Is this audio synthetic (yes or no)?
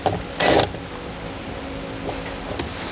no